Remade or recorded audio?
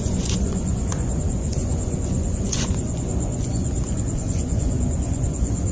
remade